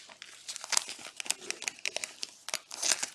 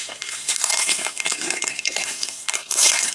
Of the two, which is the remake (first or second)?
second